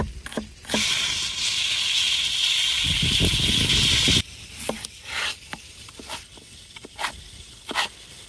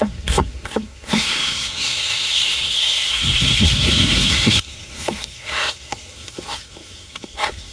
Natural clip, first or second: first